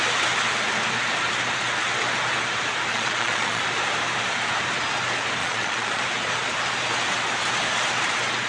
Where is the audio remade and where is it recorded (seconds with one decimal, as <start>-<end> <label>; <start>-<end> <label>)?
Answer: 0.0-2.9 recorded; 2.9-3.6 remade; 3.6-5.4 recorded; 5.4-6.0 remade; 6.0-8.5 recorded

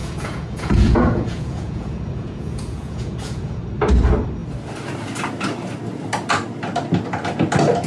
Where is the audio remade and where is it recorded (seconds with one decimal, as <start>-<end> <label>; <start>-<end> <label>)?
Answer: 0.0-3.6 remade; 3.6-7.9 recorded